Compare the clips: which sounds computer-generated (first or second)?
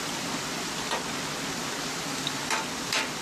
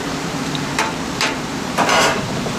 second